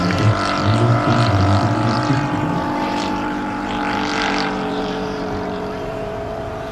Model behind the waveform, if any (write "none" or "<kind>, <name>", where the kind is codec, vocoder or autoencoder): vocoder, BigVGAN v2